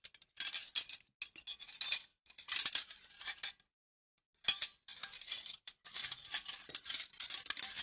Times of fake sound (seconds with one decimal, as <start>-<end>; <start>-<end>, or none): 2.1-3.5; 4.9-7.2